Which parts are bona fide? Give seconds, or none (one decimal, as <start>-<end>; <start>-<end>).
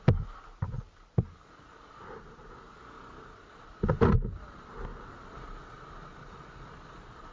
none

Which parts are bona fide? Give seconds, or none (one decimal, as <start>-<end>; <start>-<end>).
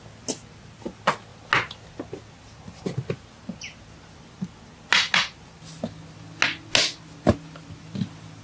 0.0-8.4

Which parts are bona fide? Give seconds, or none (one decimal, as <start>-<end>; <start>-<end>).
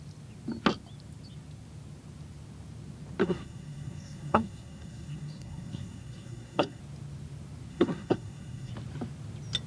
0.0-3.2; 6.8-7.7; 8.7-9.7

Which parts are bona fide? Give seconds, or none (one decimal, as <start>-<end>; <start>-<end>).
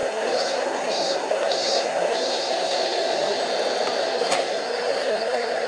3.4-4.0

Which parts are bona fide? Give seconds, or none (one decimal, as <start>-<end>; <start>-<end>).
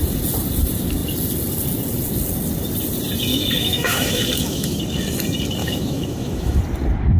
0.0-3.3; 4.8-5.6; 6.6-7.2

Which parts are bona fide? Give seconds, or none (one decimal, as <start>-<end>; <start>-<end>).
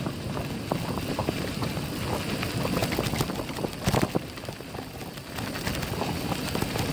0.0-1.2; 1.7-6.9